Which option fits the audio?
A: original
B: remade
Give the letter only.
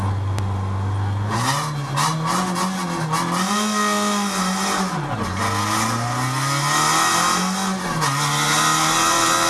A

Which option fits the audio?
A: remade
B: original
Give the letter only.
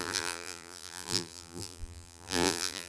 A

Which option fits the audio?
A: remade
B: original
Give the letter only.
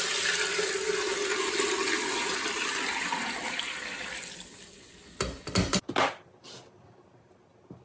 B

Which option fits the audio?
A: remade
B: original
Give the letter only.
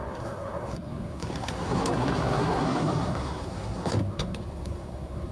A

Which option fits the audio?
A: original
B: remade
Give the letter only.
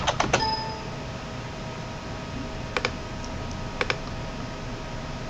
A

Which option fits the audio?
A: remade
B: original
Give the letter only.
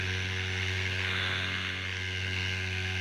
A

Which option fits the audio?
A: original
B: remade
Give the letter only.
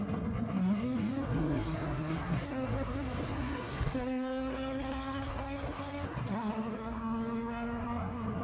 B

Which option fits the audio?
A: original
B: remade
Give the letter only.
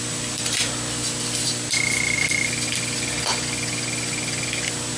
A